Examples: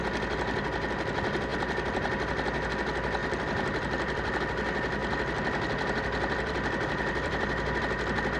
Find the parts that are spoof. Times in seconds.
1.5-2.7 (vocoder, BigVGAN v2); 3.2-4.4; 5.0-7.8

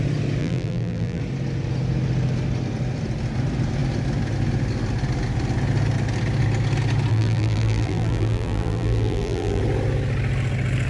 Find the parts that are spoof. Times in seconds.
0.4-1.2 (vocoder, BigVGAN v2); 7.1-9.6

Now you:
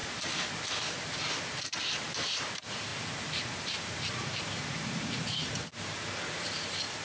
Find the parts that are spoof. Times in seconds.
0.0-2.9 (vocoder, BigVGAN v2); 3.4-7.0

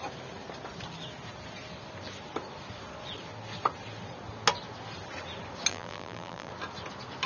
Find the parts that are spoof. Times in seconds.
5.7-6.5 (vocoder, BigVGAN v2)